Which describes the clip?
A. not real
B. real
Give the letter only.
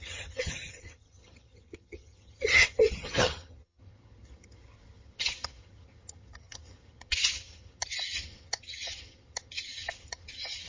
A